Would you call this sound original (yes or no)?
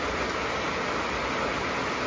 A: yes